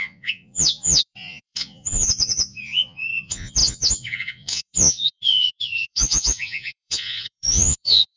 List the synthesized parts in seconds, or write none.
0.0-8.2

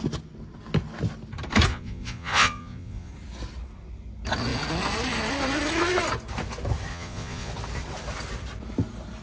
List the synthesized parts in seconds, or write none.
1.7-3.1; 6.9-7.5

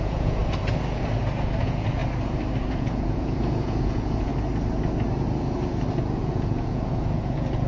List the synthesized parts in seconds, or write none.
0.0-0.4; 1.6-2.0; 2.7-4.3; 6.2-7.7

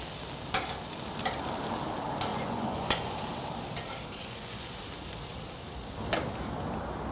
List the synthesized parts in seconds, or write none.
2.3-3.1; 4.2-4.8

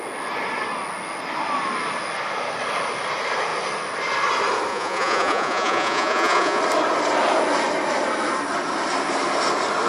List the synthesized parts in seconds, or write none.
4.7-6.6

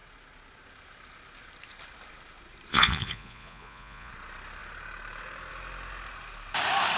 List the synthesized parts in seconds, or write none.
2.7-4.1

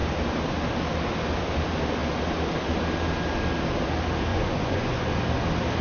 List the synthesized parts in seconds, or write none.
4.3-5.2